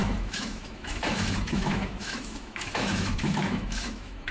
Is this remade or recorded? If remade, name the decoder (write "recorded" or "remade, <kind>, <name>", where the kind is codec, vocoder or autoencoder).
remade, autoencoder, DAC-VAE